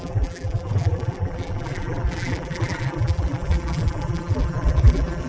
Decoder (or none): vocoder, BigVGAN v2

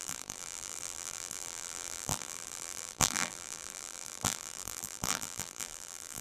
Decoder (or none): vocoder, BigVGAN v2